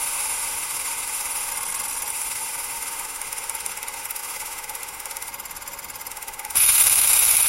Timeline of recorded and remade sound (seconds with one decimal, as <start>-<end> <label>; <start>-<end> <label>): 0.0-1.5 remade; 1.5-2.1 recorded; 2.1-5.3 remade; 5.3-6.1 recorded; 6.1-7.5 remade